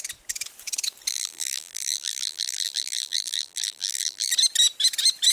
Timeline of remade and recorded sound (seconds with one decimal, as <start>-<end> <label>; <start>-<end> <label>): 0.0-1.1 recorded; 1.1-4.3 remade; 4.3-5.3 recorded